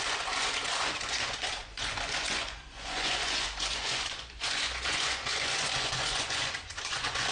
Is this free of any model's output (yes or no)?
no